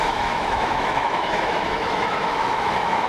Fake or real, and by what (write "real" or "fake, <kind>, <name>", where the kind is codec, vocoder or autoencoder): fake, autoencoder, DAC-VAE